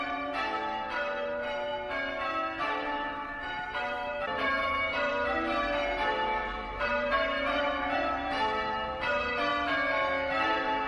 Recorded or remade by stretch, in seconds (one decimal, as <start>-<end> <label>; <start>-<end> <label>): 0.0-1.7 remade; 1.7-2.6 recorded; 2.6-9.5 remade; 9.5-10.3 recorded; 10.3-10.9 remade